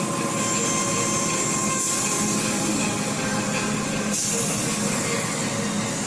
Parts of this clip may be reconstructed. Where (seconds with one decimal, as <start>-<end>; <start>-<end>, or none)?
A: 1.6-3.4; 4.2-5.4

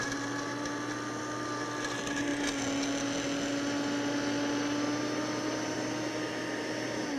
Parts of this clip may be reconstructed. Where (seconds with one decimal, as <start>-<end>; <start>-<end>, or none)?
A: none

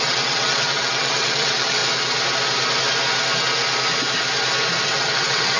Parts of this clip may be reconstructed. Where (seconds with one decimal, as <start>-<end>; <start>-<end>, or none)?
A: 0.0-1.8; 4.8-5.6

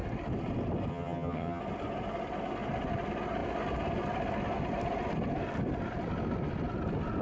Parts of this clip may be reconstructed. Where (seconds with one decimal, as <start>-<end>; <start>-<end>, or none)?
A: 0.9-1.6

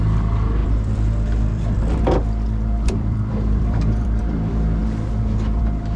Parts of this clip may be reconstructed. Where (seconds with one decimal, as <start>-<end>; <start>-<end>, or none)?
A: 0.6-4.2

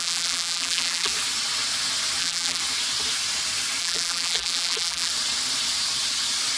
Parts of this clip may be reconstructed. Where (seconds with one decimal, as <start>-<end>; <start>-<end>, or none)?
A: 0.0-1.1; 2.2-2.6; 3.8-5.1

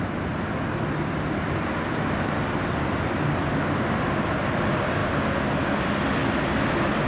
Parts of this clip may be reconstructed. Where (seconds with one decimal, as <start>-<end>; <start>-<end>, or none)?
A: none